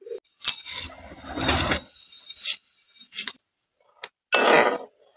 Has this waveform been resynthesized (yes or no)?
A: no